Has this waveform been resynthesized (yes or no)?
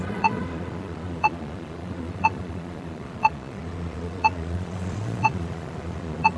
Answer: yes